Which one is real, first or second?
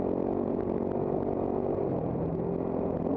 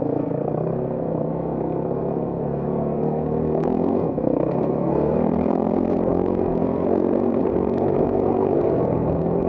first